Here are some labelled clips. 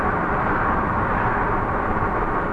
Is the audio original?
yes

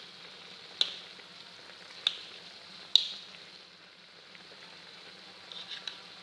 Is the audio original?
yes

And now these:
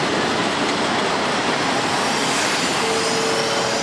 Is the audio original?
yes